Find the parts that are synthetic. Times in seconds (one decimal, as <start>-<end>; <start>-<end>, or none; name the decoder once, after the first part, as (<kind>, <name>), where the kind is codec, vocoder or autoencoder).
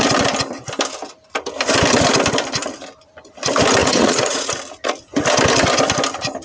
3.8-4.5 (vocoder, Vocos)